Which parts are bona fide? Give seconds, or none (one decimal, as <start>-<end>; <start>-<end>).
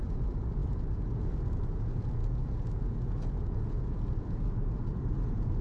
none